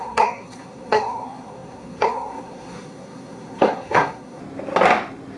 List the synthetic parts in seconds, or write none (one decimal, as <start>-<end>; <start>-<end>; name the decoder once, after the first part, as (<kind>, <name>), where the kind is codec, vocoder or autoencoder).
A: 0.0-4.4 (codec, SNAC)

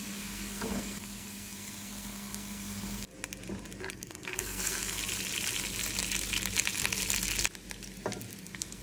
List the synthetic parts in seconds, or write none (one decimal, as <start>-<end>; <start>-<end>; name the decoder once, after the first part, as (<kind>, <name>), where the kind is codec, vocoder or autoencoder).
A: 0.0-3.1 (codec, SNAC); 3.9-5.0; 8.4-8.8

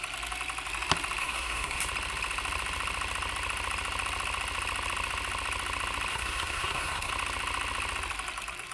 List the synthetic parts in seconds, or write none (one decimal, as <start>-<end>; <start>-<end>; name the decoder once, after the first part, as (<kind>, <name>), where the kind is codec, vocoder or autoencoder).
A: 1.2-1.8 (codec, SNAC); 6.1-7.1